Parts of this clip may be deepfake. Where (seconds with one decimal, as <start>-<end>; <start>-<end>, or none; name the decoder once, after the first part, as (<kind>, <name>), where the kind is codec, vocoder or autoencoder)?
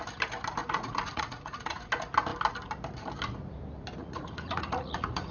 0.6-1.9 (vocoder, Vocos); 4.0-5.3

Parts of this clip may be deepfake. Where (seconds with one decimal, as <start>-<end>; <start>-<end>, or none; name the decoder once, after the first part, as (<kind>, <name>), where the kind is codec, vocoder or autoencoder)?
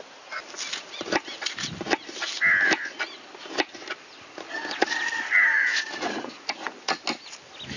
5.5-7.0 (vocoder, Vocos)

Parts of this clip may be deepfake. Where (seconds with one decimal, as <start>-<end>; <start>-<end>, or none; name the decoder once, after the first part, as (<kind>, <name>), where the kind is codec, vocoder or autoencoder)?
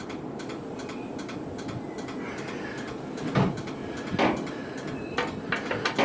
none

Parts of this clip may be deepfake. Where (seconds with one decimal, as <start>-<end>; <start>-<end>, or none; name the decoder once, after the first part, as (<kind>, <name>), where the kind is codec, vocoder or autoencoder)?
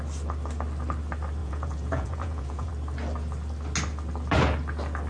1.4-2.7 (vocoder, Vocos)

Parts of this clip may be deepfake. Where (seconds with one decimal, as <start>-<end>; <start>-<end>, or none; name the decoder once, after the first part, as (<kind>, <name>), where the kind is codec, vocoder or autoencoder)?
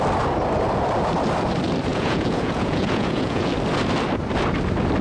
1.9-3.5 (vocoder, Vocos)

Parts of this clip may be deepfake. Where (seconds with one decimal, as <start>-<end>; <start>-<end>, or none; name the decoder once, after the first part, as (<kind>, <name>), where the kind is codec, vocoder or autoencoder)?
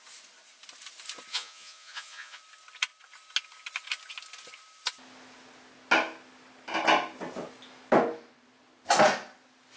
1.3-2.4 (vocoder, Vocos)